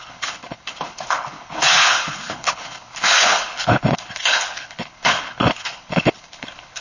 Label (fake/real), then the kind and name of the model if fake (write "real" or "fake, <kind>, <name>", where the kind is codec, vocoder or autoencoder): fake, codec, HILCodec